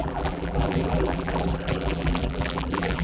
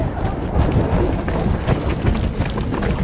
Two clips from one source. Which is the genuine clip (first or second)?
second